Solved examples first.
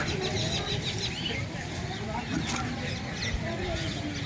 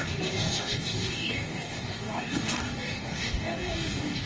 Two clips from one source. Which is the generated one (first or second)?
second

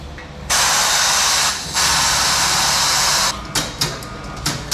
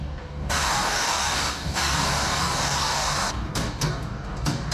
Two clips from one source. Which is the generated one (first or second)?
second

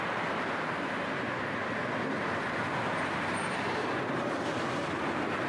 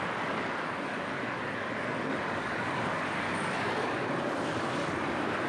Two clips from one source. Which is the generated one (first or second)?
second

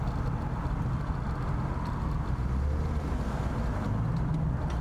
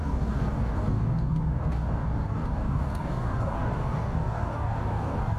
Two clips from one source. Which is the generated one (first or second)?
second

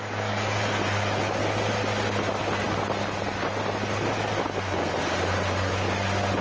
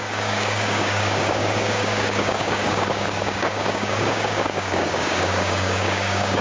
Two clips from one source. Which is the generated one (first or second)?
second